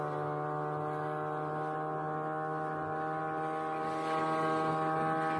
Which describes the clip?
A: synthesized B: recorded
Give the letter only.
B